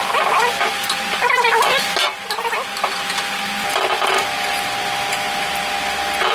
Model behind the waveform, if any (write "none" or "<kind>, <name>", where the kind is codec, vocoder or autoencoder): none